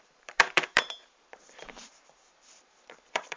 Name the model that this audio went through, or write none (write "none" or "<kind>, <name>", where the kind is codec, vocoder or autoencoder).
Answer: vocoder, BigVGAN v2